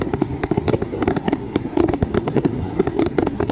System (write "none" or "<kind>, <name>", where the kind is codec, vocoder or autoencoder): codec, SNAC